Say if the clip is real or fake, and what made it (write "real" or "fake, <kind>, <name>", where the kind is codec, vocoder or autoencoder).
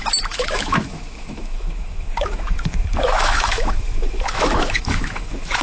fake, autoencoder, DAC-VAE